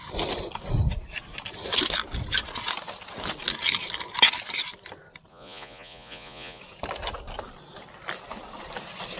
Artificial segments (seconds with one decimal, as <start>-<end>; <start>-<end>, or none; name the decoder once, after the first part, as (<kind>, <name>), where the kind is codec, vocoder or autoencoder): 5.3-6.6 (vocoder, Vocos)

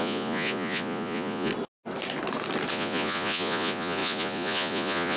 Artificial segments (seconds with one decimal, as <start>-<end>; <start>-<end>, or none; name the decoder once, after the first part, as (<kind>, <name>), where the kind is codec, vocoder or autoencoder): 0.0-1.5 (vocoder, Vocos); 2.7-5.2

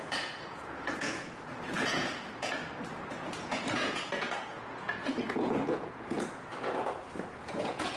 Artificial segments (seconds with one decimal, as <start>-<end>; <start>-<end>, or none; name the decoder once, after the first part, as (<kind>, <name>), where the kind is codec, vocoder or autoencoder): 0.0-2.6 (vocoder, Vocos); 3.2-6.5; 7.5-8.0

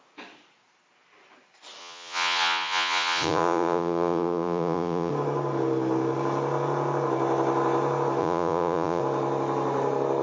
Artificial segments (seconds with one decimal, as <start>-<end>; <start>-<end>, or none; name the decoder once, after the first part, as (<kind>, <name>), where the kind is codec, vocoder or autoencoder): 1.8-5.1 (vocoder, Vocos); 8.2-9.0

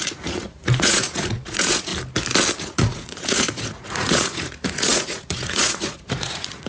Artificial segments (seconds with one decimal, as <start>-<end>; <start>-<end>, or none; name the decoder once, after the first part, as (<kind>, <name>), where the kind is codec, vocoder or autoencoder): 0.0-1.9 (vocoder, Vocos); 2.6-6.7